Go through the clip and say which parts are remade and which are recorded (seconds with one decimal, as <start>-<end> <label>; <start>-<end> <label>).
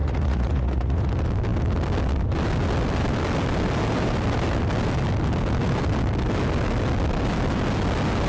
0.0-1.1 remade; 1.1-8.3 recorded